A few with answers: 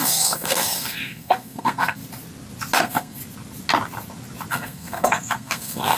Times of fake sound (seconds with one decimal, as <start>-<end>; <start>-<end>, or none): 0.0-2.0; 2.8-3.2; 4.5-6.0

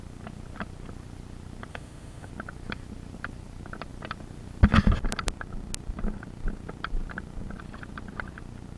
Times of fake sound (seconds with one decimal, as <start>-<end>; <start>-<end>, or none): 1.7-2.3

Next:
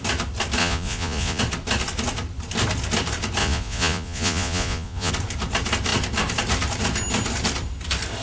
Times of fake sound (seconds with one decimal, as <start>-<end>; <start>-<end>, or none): 0.6-1.4; 3.4-5.1